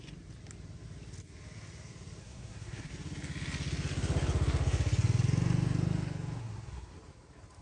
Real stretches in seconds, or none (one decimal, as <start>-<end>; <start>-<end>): 0.0-2.2; 2.9-6.4; 6.9-7.6